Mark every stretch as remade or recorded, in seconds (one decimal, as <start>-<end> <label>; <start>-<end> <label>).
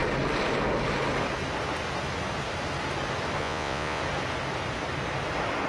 0.0-3.4 recorded; 3.4-4.0 remade; 4.0-5.7 recorded